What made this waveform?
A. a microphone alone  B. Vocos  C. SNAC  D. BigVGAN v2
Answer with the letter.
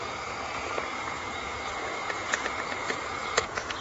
B